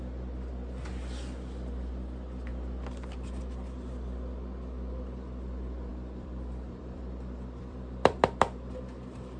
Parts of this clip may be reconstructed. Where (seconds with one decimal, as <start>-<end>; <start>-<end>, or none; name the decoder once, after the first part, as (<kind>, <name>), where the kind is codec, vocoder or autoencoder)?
5.9-8.2 (vocoder, BigVGAN v2)